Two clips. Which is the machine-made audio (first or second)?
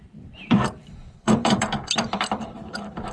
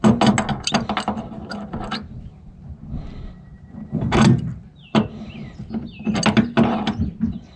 first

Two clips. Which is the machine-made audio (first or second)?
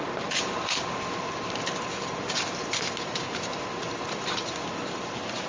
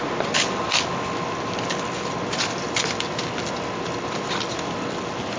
first